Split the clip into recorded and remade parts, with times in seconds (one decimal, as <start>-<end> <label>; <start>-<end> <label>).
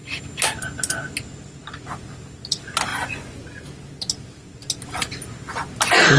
0.0-2.9 recorded; 2.9-3.4 remade; 3.4-6.2 recorded